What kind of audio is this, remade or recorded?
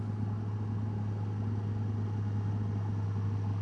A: recorded